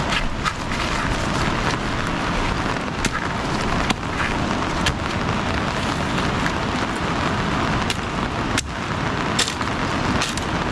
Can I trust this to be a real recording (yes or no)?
yes